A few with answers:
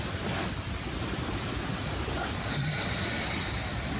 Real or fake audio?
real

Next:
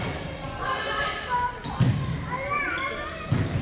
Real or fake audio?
real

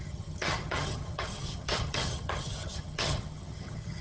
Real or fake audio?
fake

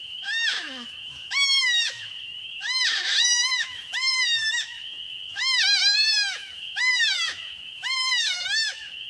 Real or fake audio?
fake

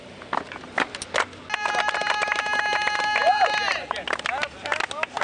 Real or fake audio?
real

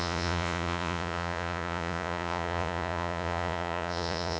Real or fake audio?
fake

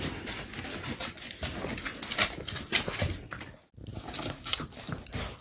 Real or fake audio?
real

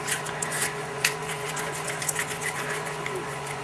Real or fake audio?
fake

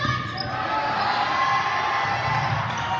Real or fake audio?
real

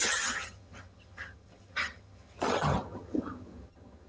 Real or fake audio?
fake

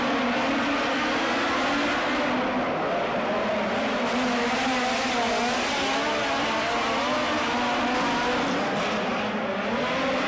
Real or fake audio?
real